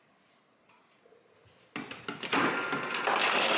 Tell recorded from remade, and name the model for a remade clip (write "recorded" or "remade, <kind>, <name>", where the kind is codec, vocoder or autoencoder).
recorded